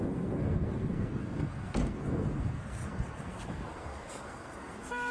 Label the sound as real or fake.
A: fake